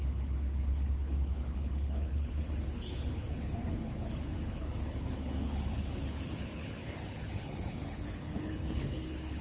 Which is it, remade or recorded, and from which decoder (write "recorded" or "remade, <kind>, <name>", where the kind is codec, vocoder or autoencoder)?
remade, codec, HILCodec